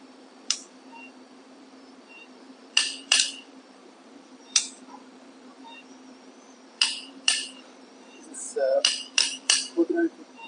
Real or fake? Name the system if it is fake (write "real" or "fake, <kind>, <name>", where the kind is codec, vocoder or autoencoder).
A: fake, vocoder, BigVGAN v2